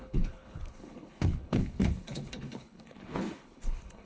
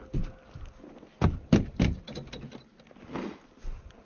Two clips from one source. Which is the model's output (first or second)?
first